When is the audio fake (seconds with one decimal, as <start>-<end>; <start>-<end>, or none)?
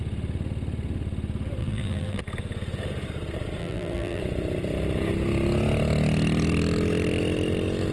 1.6-2.2; 3.6-4.2